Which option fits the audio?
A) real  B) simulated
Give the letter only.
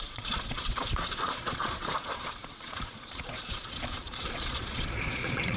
B